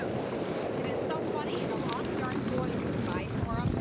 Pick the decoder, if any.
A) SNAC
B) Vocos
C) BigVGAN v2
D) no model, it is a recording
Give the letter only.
D